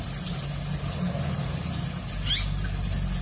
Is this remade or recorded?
recorded